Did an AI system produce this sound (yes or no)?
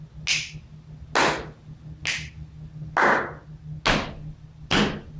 no